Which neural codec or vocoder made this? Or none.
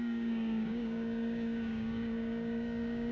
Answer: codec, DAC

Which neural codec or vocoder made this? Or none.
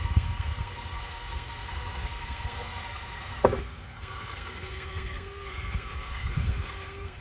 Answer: codec, SNAC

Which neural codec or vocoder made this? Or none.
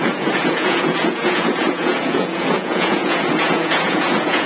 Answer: vocoder, Vocos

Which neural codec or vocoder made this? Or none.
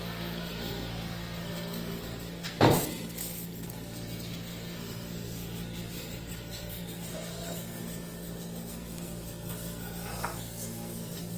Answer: codec, SNAC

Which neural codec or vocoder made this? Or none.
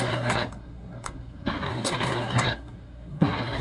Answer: codec, SNAC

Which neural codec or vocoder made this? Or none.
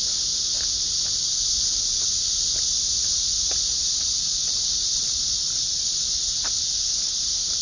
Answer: none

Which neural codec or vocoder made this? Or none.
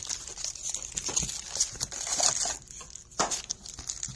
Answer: none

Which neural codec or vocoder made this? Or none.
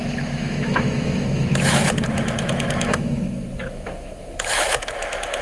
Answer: autoencoder, DAC-VAE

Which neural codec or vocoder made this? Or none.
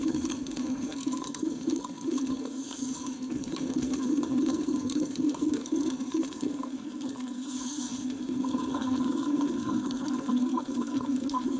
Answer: codec, SNAC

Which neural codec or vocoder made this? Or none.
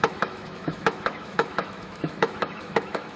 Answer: autoencoder, DAC-VAE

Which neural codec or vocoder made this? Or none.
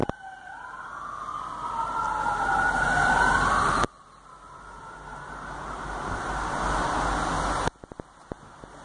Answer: none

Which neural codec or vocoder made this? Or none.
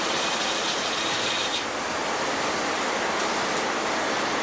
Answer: vocoder, BigVGAN v2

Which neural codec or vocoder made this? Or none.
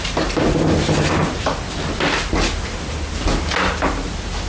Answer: none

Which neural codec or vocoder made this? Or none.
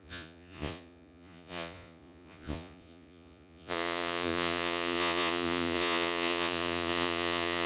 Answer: vocoder, Vocos